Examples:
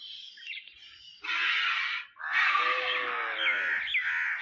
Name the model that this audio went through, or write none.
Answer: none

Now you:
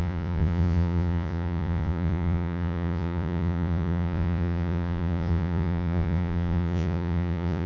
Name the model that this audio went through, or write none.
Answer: vocoder, Vocos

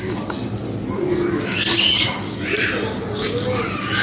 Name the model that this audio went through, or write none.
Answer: none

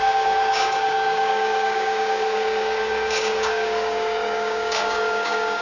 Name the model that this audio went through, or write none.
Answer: codec, DAC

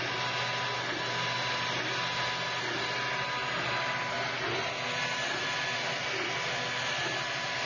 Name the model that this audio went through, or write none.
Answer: none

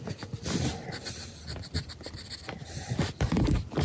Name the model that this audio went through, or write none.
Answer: none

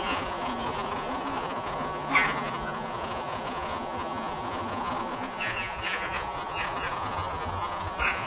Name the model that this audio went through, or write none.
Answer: vocoder, Vocos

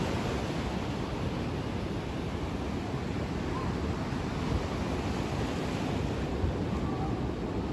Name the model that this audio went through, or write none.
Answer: none